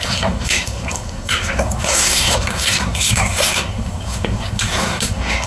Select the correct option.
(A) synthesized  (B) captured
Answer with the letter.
A